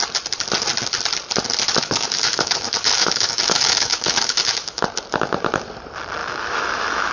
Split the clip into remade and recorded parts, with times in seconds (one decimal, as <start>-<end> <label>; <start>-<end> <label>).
0.0-1.8 recorded; 1.8-4.8 remade; 4.8-6.2 recorded; 6.2-7.1 remade